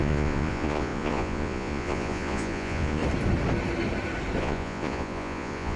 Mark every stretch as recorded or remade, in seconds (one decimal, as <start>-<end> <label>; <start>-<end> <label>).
0.0-3.0 remade; 3.0-4.4 recorded; 4.4-5.8 remade